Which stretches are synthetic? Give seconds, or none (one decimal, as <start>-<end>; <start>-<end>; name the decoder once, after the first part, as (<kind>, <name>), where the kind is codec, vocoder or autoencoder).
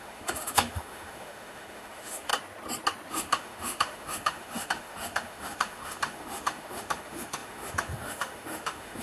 0.0-2.3 (autoencoder, DAC-VAE); 3.1-9.0